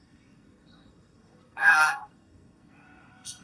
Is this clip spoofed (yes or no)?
yes